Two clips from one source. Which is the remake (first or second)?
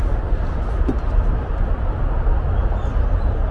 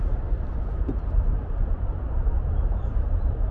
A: second